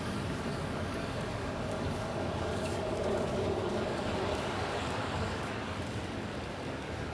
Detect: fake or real fake